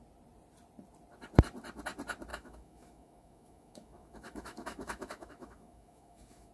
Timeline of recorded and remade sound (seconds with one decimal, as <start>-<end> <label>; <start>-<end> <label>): 0.0-2.3 recorded; 2.3-6.5 remade